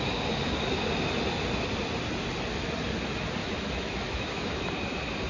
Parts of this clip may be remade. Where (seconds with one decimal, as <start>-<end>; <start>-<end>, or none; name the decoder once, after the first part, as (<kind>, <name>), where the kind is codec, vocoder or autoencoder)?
3.4-4.7 (autoencoder, DAC-VAE)